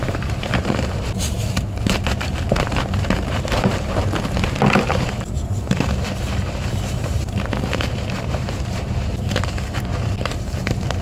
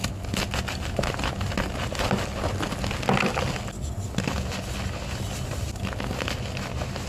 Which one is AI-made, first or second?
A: first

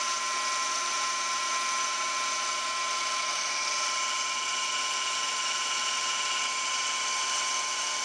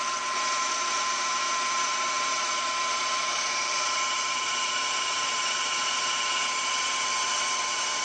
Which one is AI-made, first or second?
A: second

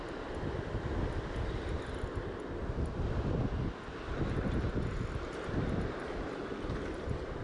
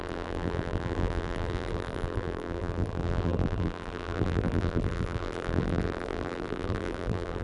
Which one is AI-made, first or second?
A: second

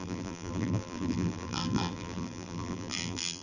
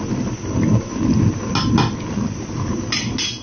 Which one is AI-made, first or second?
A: first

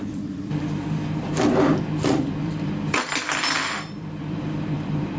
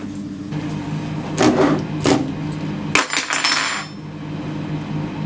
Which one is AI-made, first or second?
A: first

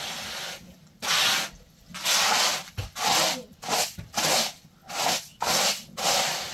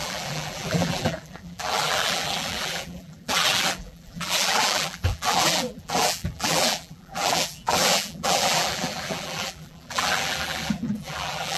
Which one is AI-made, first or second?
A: second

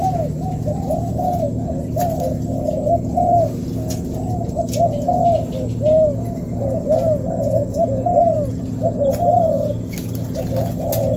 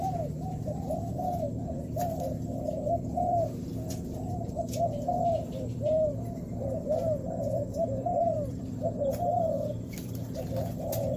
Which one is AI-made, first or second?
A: second